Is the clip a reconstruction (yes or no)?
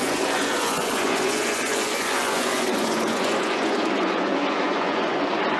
yes